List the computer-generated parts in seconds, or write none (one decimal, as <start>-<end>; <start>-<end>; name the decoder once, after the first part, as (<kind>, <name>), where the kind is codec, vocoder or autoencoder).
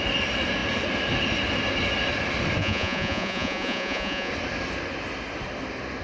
2.6-4.3 (vocoder, Vocos)